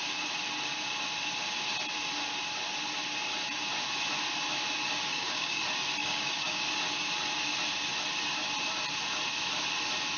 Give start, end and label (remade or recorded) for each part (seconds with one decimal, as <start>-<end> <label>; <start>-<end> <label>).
0.0-5.1 recorded; 5.1-5.6 remade; 5.6-6.0 recorded; 6.0-6.6 remade; 6.6-10.2 recorded